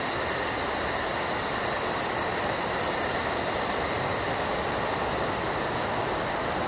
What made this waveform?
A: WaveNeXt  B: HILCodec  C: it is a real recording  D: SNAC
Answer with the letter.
C